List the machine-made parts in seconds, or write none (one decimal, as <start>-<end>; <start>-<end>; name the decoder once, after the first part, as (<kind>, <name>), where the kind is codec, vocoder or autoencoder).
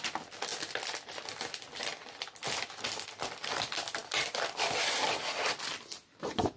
0.0-0.5 (vocoder, BigVGAN v2); 1.5-6.6